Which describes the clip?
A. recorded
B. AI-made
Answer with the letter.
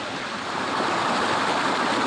A